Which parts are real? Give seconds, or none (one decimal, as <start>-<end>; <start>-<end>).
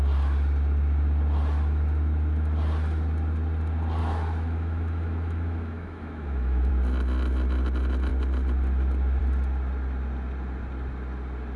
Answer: 0.0-4.0; 6.7-11.6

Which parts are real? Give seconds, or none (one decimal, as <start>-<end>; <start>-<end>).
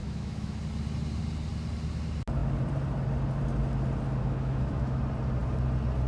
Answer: 0.6-4.2; 5.0-6.1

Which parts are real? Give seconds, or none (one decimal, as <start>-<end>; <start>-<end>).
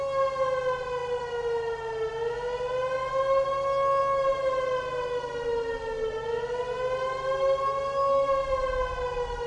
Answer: 0.0-9.5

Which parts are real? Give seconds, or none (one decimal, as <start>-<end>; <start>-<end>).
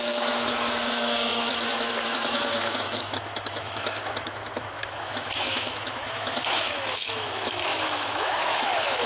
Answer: none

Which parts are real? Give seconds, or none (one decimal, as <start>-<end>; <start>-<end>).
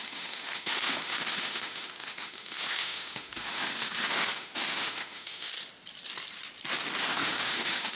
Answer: 5.5-7.0